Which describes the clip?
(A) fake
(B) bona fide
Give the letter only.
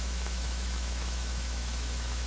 A